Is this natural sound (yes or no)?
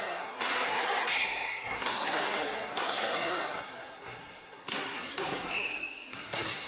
no